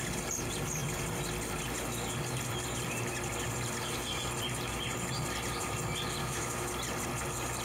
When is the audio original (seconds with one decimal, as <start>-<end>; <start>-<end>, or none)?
0.0-6.2; 6.7-7.6